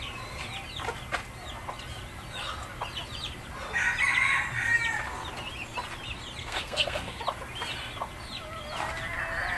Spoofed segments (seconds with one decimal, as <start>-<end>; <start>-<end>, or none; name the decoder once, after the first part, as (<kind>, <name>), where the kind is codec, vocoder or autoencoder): 6.4-7.2 (codec, SNAC)